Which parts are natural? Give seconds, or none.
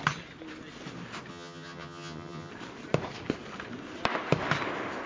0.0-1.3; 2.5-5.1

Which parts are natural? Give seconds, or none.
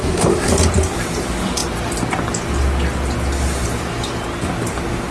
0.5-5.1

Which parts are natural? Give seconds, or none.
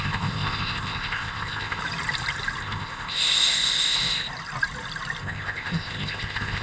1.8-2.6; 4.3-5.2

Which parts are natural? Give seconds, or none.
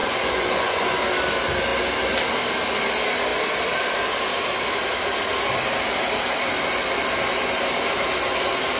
1.0-8.8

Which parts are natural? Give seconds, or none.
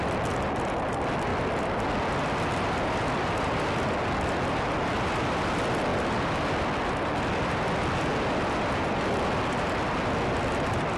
0.0-11.0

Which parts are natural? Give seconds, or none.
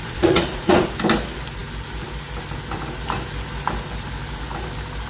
0.9-5.1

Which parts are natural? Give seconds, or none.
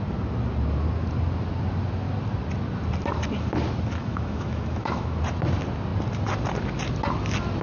0.0-4.0; 5.2-7.6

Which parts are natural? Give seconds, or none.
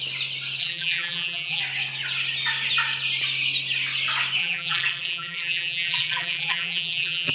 0.0-0.6; 1.6-4.4